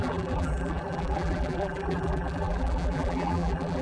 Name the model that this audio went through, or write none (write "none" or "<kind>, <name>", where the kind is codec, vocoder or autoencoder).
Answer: vocoder, BigVGAN v2